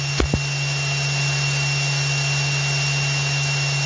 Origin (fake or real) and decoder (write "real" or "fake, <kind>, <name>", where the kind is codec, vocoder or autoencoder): real